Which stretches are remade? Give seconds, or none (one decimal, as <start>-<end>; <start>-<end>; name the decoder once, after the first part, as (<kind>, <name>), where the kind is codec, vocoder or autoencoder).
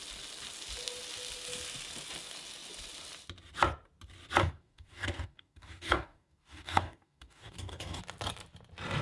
4.4-8.0 (codec, DAC)